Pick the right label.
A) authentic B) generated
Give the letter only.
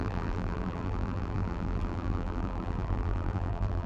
B